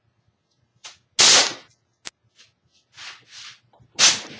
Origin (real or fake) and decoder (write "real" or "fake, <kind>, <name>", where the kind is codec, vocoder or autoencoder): real